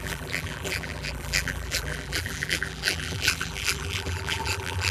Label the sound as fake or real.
fake